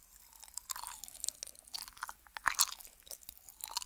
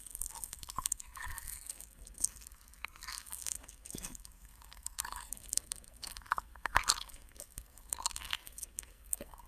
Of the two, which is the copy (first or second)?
second